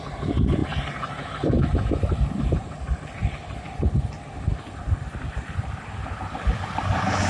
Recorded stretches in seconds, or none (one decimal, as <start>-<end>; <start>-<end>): none

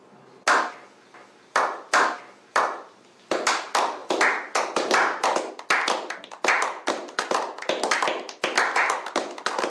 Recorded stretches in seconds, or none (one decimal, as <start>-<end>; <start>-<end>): 0.0-9.7

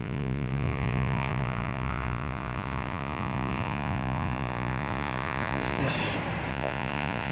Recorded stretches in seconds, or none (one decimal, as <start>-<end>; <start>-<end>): 5.8-6.5

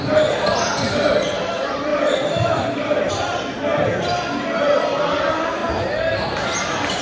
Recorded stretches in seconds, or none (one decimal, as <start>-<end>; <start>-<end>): 5.6-6.2

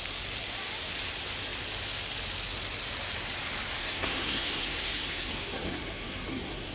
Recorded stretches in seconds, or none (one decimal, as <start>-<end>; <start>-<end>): 0.0-3.8

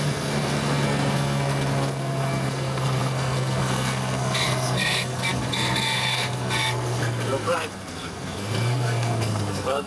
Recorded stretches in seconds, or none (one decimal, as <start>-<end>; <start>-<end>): none